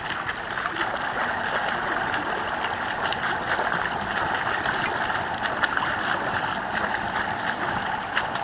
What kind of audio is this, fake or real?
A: real